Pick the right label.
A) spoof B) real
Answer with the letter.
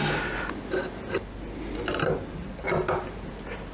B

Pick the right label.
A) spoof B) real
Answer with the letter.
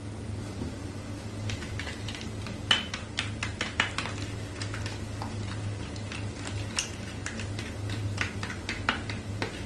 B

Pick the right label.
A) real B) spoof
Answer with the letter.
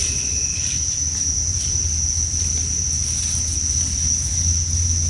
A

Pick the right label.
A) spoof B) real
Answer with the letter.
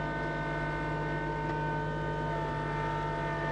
B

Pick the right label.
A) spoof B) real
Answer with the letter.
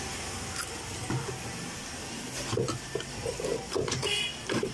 B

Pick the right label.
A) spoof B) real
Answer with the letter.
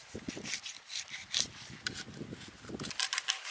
B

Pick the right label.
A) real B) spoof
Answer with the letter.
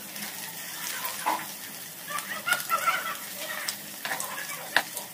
A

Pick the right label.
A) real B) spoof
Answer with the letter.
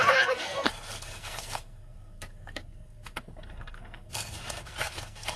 B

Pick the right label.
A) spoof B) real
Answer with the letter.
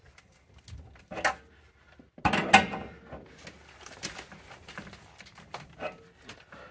B